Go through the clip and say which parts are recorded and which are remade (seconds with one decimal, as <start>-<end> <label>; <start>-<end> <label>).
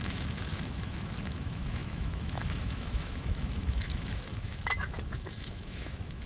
0.0-6.3 remade